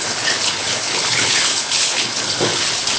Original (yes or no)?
no